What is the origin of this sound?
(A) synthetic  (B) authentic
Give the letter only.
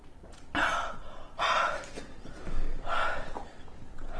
B